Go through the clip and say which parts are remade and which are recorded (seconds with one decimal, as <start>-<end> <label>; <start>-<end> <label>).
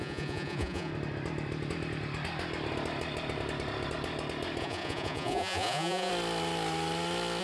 0.0-0.9 remade; 0.9-4.6 recorded; 4.6-6.1 remade; 6.1-7.4 recorded